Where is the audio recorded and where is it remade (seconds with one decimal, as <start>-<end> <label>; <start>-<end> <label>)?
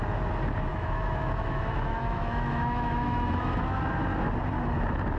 0.0-0.7 recorded; 0.7-3.8 remade; 3.8-5.2 recorded